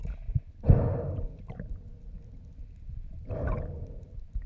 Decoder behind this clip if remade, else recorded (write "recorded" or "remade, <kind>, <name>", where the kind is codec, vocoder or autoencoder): recorded